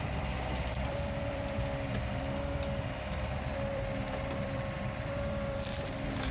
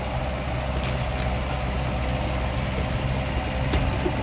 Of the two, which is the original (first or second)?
second